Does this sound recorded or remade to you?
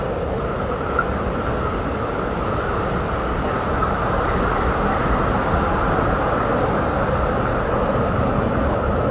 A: recorded